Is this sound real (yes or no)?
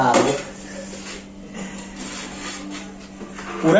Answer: yes